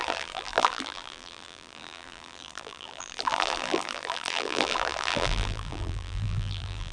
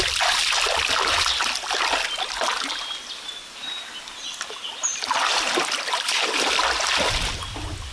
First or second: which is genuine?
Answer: second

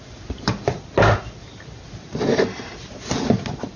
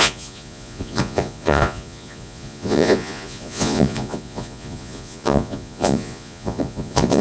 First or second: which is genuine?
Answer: first